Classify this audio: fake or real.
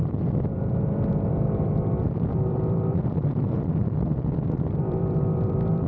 fake